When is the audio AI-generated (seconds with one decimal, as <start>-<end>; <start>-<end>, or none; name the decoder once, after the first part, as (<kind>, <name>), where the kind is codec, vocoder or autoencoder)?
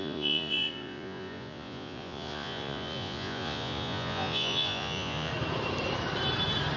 0.0-5.3 (vocoder, Vocos)